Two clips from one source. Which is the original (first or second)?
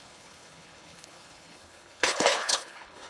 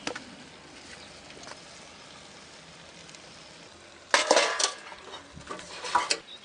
second